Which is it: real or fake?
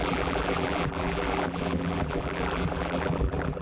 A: fake